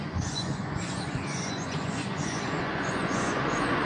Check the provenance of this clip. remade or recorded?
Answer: remade